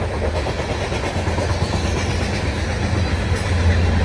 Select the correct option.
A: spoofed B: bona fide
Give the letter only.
B